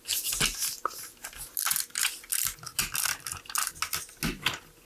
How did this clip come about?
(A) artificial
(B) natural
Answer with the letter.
B